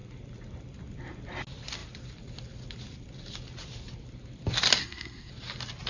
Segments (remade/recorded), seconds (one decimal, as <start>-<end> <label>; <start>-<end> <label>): 0.0-4.8 recorded; 4.8-5.3 remade; 5.3-5.9 recorded